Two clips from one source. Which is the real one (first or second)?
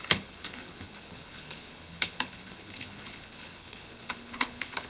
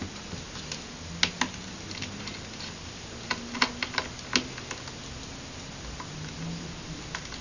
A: second